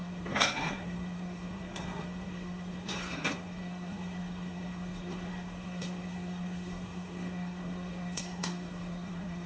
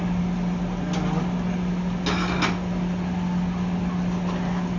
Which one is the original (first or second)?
second